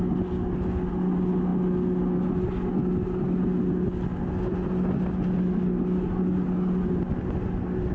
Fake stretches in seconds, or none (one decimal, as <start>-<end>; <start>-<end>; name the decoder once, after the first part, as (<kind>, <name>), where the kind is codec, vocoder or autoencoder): none